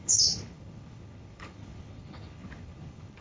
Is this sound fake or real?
fake